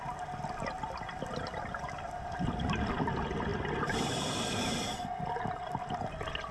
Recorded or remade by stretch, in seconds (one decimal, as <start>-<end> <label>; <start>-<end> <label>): 0.0-6.5 recorded

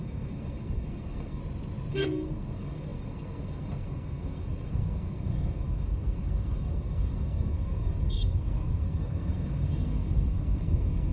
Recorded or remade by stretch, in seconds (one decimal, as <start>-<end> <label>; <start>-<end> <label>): 0.0-1.4 remade; 1.4-1.9 recorded; 1.9-11.1 remade

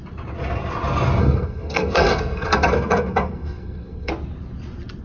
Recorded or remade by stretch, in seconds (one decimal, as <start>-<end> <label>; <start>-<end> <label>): 0.0-1.2 recorded; 1.2-4.1 remade; 4.1-5.0 recorded

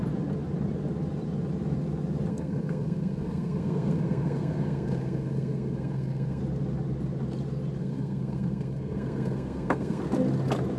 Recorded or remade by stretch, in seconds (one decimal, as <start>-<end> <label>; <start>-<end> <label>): 0.0-2.3 recorded; 2.3-6.4 remade; 6.4-7.8 recorded; 7.8-10.0 remade; 10.0-10.8 recorded

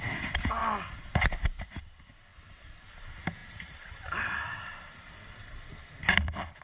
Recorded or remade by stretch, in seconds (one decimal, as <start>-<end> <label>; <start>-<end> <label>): 0.0-6.6 recorded

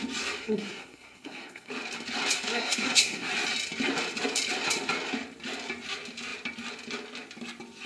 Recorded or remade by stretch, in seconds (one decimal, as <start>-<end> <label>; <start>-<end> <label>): 0.0-0.4 recorded; 0.4-1.7 remade; 1.7-2.5 recorded; 2.5-3.3 remade; 3.3-7.9 recorded

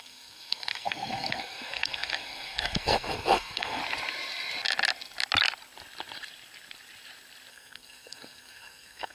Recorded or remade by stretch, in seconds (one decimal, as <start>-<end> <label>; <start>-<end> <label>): 0.0-3.8 remade; 3.8-7.5 recorded; 7.5-9.1 remade

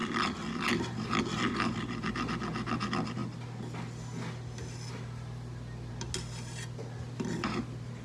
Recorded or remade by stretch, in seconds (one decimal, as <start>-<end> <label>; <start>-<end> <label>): 0.0-8.0 recorded